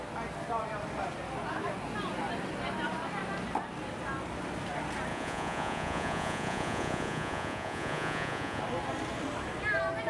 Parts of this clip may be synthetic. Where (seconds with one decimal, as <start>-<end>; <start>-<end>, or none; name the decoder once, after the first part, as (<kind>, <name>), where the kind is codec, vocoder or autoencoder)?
5.1-8.6 (vocoder, Vocos)